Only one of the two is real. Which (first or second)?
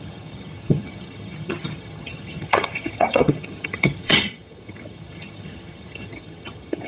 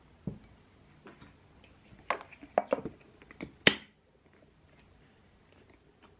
second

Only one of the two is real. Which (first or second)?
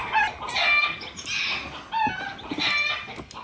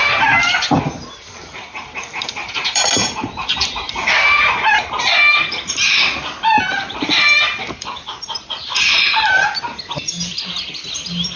first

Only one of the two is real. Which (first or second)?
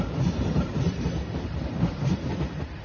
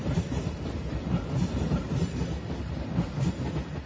second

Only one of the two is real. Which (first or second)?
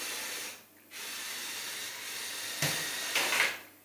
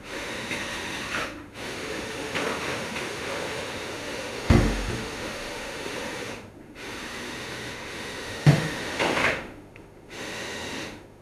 first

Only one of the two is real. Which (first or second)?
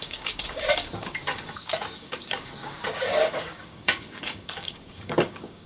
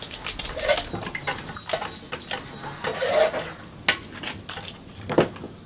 second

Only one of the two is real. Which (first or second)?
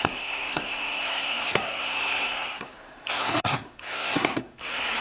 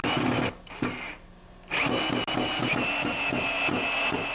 second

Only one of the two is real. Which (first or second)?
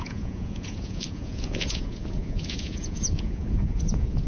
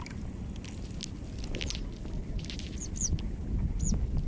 second